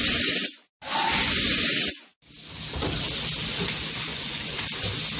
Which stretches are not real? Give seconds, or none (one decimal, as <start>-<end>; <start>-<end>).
4.1-4.6